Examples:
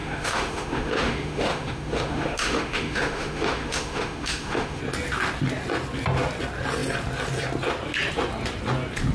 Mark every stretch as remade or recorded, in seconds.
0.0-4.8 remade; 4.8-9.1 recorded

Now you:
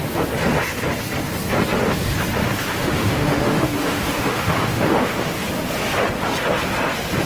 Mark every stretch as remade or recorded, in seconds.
0.0-2.4 recorded; 2.4-5.4 remade; 5.4-7.3 recorded